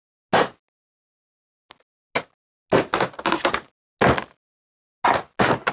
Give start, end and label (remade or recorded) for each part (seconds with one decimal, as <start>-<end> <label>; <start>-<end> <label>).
0.0-5.7 recorded